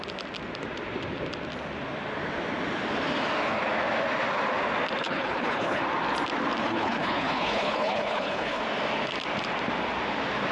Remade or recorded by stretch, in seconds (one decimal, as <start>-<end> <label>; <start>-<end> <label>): 0.0-5.0 recorded; 5.0-5.8 remade; 5.8-6.6 recorded; 6.6-8.6 remade; 8.6-10.5 recorded